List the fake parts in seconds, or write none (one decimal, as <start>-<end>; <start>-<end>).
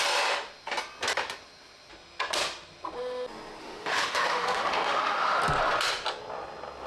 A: 3.6-5.4